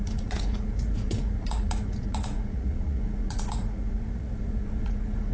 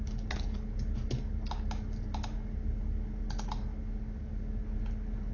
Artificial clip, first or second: first